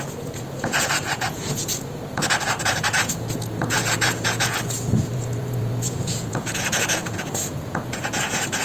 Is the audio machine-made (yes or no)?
yes